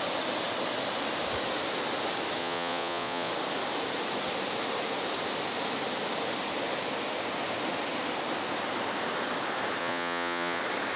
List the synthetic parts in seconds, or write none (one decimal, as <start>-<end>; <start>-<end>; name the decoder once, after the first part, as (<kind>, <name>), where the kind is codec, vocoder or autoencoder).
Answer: 2.4-3.3 (vocoder, Vocos); 9.8-10.6